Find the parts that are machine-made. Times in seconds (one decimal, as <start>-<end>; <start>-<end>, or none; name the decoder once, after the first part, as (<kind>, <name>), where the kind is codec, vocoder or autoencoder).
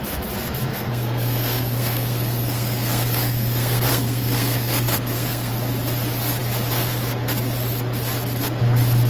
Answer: 0.7-5.5 (codec, SNAC)